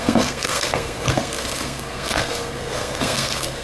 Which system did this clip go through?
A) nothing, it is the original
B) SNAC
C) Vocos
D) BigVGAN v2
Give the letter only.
B